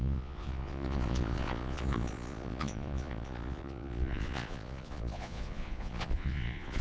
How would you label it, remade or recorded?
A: remade